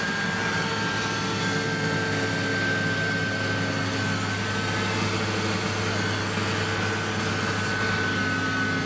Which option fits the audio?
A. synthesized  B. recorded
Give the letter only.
B